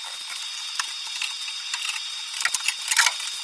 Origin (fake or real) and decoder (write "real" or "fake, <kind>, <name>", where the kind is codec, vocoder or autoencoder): real